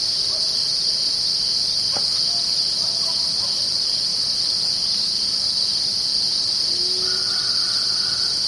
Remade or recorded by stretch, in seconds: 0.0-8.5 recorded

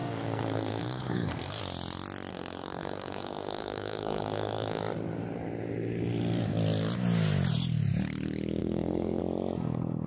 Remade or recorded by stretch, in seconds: 0.0-1.6 remade; 1.6-2.3 recorded; 2.3-4.8 remade; 4.8-8.6 recorded; 8.6-9.2 remade; 9.2-10.1 recorded

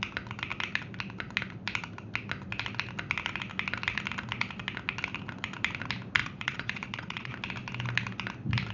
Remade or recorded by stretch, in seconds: 0.0-6.2 recorded; 6.2-7.3 remade; 7.3-8.7 recorded